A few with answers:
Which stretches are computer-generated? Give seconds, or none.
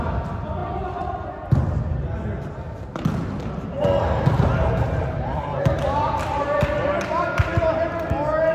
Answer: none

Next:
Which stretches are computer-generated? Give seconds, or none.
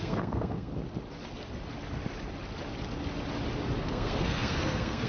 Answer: 0.0-0.7 (codec, SNAC); 3.8-5.1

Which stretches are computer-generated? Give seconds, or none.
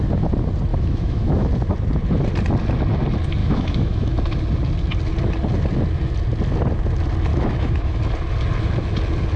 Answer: 0.7-1.5 (autoencoder, DAC-VAE); 3.4-4.2; 7.3-8.0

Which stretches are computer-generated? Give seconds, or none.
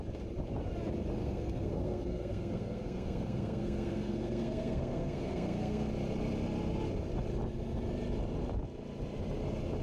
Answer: 1.2-5.9 (codec, SNAC)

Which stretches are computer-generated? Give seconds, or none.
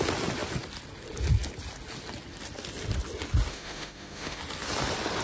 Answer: 3.5-4.4 (autoencoder, DAC-VAE)